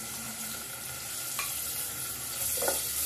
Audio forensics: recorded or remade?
recorded